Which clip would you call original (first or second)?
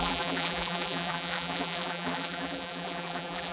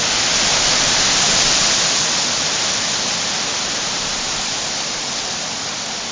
second